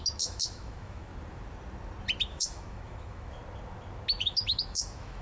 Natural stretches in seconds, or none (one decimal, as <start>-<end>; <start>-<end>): 1.1-2.2; 3.4-4.2